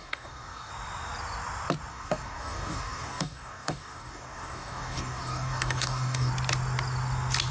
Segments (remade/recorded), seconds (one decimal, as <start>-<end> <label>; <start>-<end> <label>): 0.0-0.7 remade; 0.7-1.9 recorded; 1.9-6.3 remade; 6.3-7.5 recorded